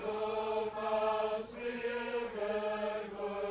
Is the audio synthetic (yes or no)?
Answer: yes